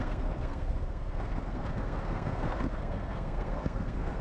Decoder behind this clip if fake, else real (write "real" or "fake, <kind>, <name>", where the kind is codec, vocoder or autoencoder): fake, codec, SNAC